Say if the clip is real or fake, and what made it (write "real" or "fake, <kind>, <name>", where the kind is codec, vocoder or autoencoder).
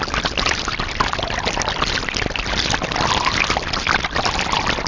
real